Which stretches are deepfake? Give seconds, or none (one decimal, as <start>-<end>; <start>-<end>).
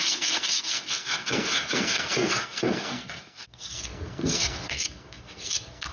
0.0-5.9